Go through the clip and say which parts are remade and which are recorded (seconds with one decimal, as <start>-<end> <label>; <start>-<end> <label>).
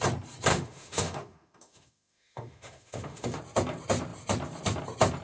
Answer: 0.0-0.5 recorded; 0.5-3.4 remade; 3.4-5.2 recorded